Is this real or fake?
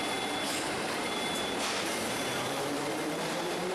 fake